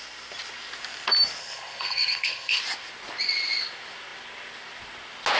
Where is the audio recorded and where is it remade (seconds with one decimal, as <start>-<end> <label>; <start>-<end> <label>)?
0.0-1.4 recorded; 1.4-2.6 remade; 2.6-5.4 recorded